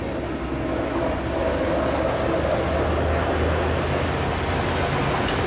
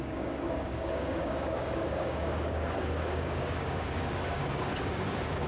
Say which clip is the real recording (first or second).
first